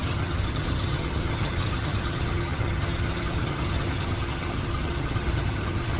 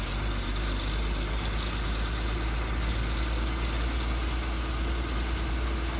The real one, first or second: second